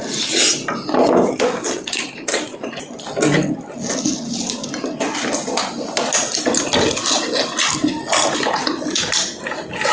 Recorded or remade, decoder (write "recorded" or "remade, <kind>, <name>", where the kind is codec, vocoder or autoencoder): recorded